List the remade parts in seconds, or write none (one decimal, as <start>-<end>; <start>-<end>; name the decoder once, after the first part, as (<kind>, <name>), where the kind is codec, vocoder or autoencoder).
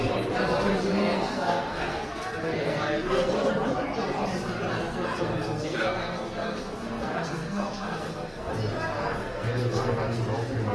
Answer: 0.9-3.5 (codec, SNAC); 4.7-8.5; 9.0-10.2